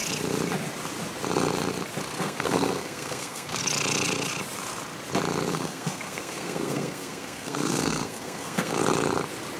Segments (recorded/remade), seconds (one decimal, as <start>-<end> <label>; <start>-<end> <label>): 0.0-2.2 recorded; 2.2-3.6 remade; 3.6-5.5 recorded; 5.5-8.8 remade; 8.8-9.6 recorded